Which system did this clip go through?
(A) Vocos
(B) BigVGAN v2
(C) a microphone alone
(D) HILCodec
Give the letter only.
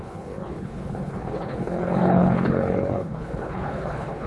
D